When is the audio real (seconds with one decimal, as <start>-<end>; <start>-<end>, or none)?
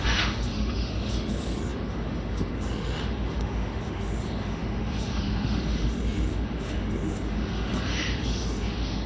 none